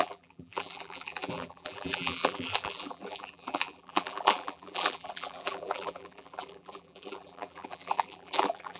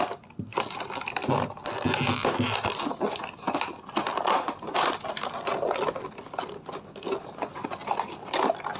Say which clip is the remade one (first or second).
first